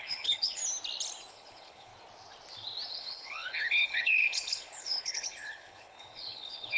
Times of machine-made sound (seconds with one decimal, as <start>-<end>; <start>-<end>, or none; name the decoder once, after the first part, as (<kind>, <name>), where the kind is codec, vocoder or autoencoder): 0.0-0.6 (codec, HILCodec); 1.3-1.9; 2.9-6.8